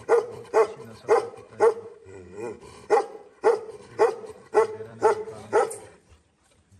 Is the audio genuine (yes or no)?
no